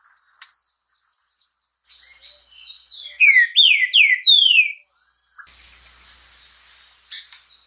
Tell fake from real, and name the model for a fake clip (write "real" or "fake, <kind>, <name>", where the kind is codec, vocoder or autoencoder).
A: real